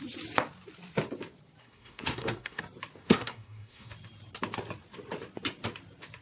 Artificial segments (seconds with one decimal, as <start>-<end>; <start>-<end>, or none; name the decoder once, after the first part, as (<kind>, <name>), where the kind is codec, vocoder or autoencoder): 1.6-2.6 (codec, SNAC); 3.0-3.9